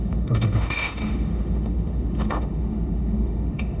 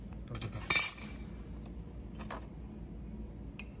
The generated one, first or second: first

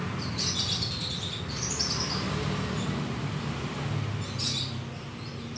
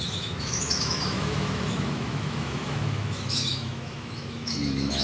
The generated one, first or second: second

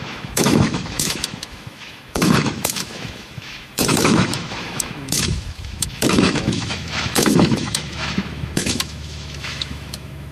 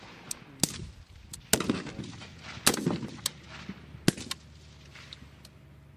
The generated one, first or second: first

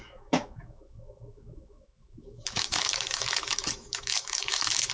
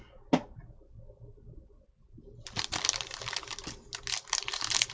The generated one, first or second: first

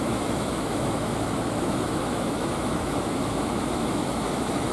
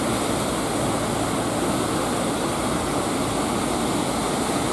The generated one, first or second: first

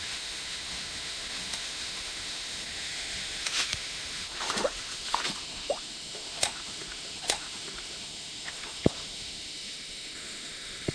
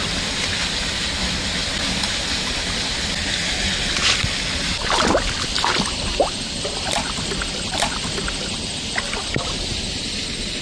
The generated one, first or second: first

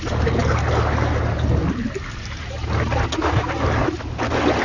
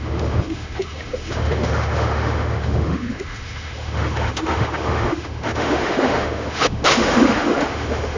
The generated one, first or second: second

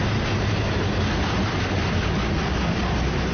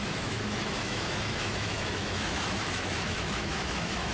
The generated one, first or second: second